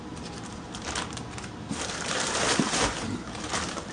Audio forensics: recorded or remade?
remade